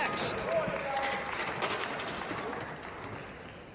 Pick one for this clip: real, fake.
real